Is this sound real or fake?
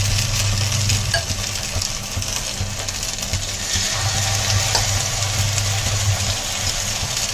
real